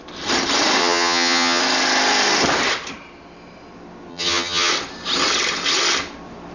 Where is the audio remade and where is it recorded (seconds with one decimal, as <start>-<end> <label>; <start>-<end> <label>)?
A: 0.0-0.8 recorded; 0.8-1.6 remade; 1.6-4.1 recorded; 4.1-4.7 remade; 4.7-6.5 recorded